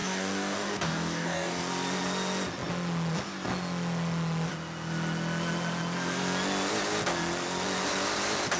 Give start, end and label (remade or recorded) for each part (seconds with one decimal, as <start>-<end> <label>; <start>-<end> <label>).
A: 0.0-1.6 remade; 1.6-8.6 recorded